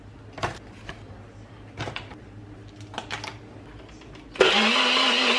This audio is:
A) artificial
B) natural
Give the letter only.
B